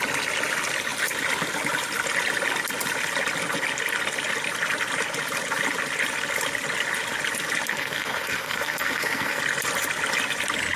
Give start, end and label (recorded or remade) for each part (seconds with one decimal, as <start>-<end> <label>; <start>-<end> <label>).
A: 0.0-7.7 recorded; 7.7-9.4 remade; 9.4-10.8 recorded